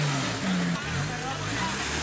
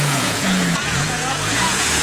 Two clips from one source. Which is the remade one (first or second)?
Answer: second